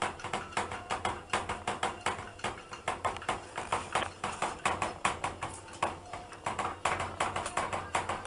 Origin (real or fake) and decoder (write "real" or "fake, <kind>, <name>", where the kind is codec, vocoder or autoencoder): fake, vocoder, BigVGAN v2